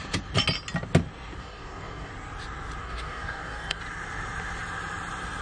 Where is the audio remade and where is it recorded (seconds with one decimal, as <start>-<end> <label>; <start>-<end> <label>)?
0.0-1.4 recorded; 1.4-2.1 remade; 2.1-2.8 recorded; 2.8-3.8 remade; 3.8-5.4 recorded